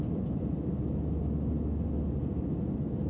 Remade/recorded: recorded